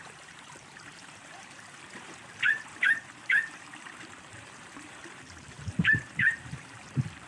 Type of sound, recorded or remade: remade